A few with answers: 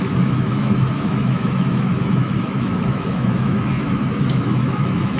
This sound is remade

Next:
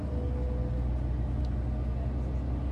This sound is recorded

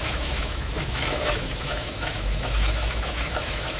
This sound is remade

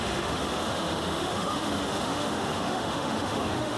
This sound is remade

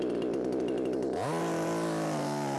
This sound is recorded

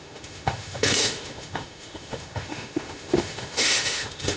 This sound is remade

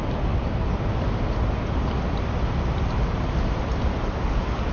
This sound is recorded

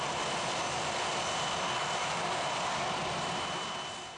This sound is recorded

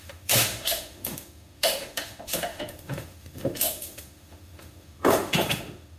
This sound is remade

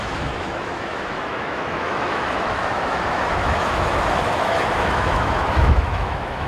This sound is remade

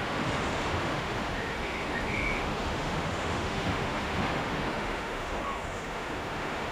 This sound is remade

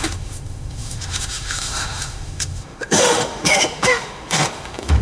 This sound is remade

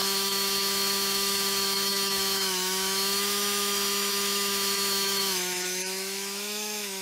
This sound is remade